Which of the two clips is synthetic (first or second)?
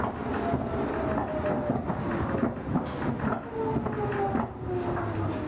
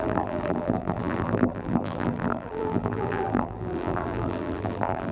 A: second